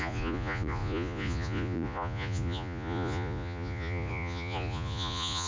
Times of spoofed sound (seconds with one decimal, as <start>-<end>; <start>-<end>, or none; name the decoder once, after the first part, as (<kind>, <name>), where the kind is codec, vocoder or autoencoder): 0.0-5.5 (vocoder, Vocos)